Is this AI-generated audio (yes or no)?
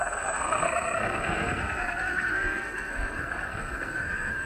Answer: yes